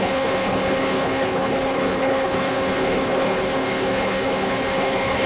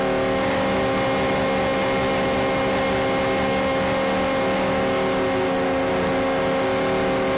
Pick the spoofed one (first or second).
first